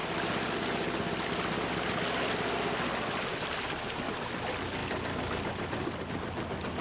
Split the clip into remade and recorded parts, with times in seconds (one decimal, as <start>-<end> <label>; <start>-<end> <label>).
0.0-6.8 recorded